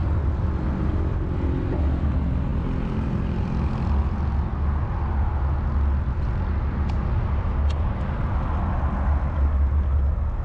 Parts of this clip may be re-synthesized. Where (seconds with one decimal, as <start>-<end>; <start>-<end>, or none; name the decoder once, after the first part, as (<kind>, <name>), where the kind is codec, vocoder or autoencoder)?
none